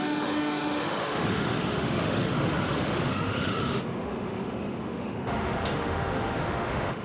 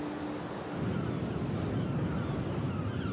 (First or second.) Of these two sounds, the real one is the second